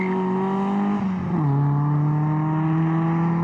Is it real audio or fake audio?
real